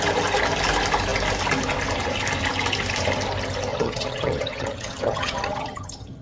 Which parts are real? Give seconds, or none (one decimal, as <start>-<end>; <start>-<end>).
0.0-3.7